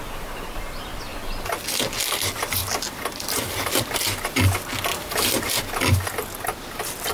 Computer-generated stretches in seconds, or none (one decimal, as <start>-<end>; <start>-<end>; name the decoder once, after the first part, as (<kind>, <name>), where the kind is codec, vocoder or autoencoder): 2.6-3.8 (vocoder, BigVGAN v2); 4.9-5.5